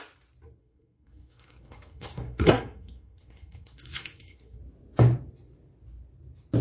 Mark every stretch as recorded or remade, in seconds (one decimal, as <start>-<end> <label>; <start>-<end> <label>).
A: 0.0-0.6 recorded; 0.6-4.6 remade; 4.6-6.6 recorded